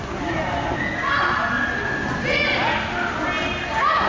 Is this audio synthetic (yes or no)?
no